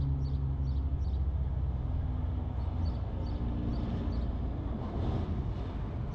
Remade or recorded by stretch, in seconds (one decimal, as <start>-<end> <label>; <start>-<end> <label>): 0.0-6.1 recorded